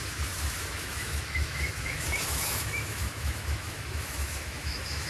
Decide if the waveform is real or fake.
fake